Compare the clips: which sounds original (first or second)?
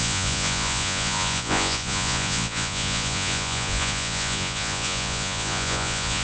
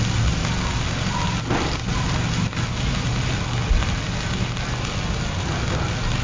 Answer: second